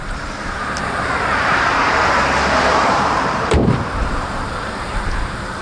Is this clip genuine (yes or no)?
no